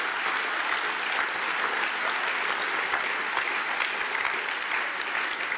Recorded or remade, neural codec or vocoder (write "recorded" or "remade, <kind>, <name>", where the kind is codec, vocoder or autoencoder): recorded